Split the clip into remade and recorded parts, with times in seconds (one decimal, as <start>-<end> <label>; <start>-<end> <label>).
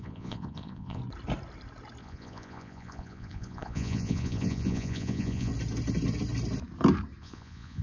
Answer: 0.0-1.0 remade; 1.0-2.0 recorded; 2.0-5.5 remade; 5.5-7.2 recorded; 7.2-7.8 remade